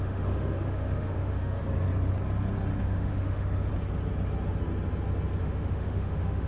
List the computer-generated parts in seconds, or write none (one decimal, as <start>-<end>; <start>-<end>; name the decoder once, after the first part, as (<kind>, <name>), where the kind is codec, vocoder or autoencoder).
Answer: 0.0-1.6 (autoencoder, DAC-VAE); 2.8-3.7; 5.4-6.5